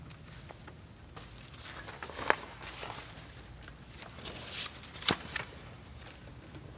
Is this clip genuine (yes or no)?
yes